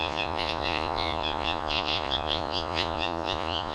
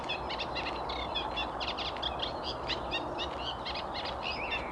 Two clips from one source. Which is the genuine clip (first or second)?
second